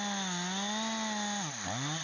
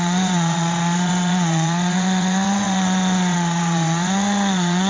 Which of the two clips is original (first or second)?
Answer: first